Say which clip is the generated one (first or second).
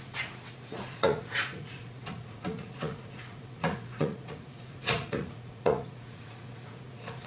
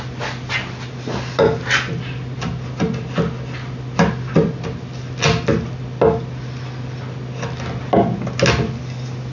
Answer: first